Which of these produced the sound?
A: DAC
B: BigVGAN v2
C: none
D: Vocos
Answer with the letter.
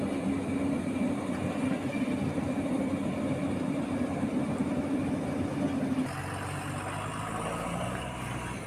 C